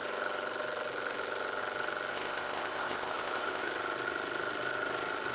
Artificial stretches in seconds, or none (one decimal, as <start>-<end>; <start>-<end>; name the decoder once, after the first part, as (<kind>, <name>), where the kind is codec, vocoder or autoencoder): 2.1-3.7 (codec, ZipCodec)